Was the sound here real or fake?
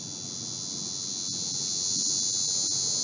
real